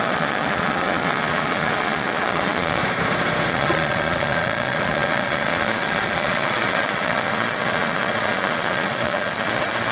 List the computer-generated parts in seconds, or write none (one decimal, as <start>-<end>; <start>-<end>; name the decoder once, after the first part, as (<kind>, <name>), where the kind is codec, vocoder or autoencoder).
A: 0.0-2.8 (vocoder, Vocos); 3.5-9.9